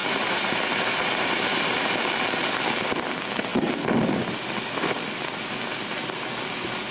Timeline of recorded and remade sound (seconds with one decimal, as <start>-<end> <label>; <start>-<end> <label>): 0.0-1.8 remade; 1.8-6.9 recorded